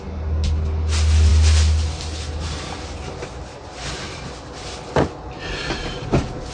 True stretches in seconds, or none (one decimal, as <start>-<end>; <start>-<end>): 0.0-6.5